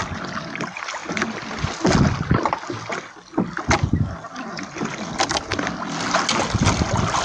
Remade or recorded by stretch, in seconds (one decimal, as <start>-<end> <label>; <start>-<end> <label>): 0.0-7.2 recorded